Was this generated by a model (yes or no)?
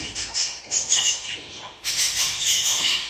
yes